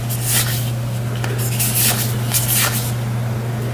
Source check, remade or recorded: recorded